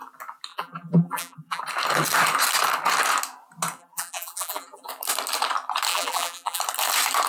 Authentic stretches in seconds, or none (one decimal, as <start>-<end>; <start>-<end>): 0.0-0.5; 1.6-3.8; 4.9-5.9; 6.6-7.3